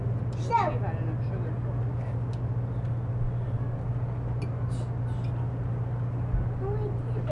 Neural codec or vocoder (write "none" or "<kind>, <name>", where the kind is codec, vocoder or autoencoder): none